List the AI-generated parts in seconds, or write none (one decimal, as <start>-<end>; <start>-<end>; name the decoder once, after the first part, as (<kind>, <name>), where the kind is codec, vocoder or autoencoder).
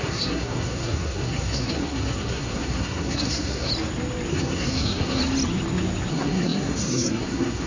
0.0-3.7 (codec, SNAC); 4.3-5.2; 6.1-7.7